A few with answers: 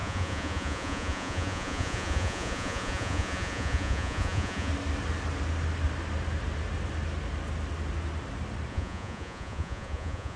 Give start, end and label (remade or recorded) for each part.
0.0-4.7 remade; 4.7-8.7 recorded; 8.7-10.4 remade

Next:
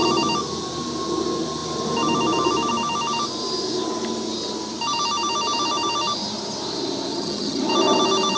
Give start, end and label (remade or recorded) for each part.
0.0-7.1 recorded; 7.1-7.6 remade; 7.6-8.4 recorded

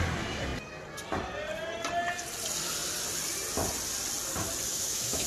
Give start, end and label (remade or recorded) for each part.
0.0-4.7 recorded; 4.7-5.3 remade

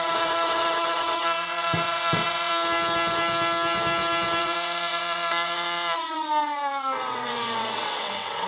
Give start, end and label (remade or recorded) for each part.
0.0-2.5 remade; 2.5-4.4 recorded; 4.4-8.5 remade